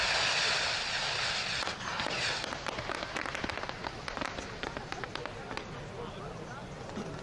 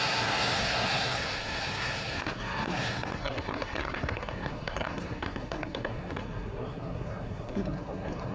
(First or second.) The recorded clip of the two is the first